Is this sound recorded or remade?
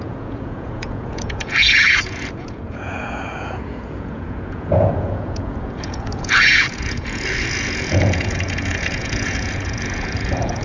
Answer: remade